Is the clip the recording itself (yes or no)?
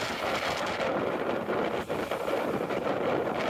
yes